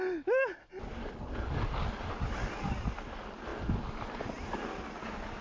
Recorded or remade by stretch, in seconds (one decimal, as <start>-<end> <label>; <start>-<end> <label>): 0.0-3.5 recorded; 3.5-4.0 remade; 4.0-5.4 recorded